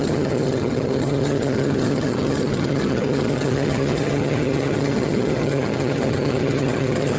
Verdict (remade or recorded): remade